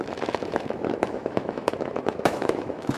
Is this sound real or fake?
fake